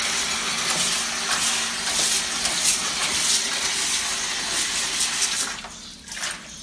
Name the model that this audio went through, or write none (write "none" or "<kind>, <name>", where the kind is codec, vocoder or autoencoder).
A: none